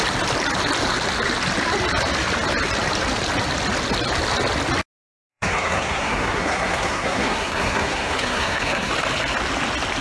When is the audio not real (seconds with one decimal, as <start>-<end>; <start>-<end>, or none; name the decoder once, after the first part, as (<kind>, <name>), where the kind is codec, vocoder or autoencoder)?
5.3-8.9 (codec, SNAC)